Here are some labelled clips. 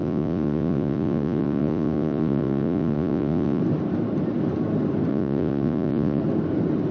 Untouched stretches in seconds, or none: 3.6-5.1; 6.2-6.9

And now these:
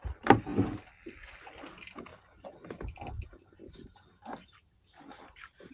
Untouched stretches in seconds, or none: 0.0-5.7

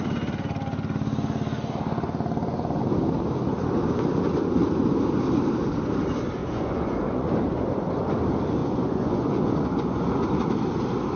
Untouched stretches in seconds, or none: 0.0-6.4; 7.3-8.6; 10.0-11.2

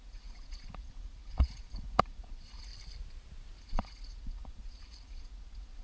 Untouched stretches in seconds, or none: 2.7-3.6

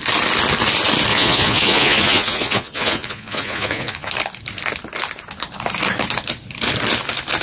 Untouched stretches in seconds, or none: 0.0-1.1; 4.1-7.4